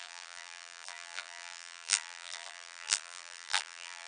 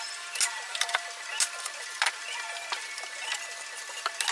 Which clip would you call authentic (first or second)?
second